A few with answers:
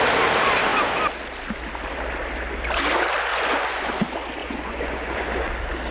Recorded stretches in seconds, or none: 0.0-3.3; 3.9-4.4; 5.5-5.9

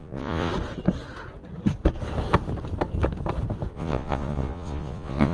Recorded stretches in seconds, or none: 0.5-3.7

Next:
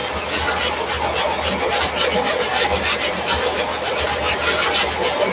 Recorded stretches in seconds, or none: 0.0-5.3

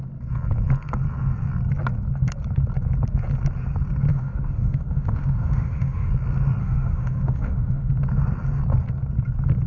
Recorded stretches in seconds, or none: 0.0-4.1; 6.1-6.6; 7.9-9.7

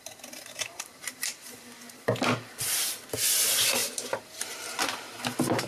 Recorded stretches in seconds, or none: 0.0-0.4; 1.0-3.8; 5.2-5.7